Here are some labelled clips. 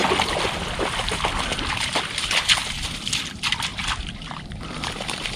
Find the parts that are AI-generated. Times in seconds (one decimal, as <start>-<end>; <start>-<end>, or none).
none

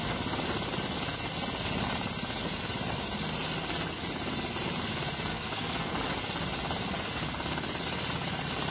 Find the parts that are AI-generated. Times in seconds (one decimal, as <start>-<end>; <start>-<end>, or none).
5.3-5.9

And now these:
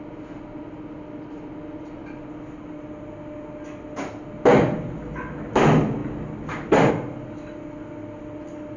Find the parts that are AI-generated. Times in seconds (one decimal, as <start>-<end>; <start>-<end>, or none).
none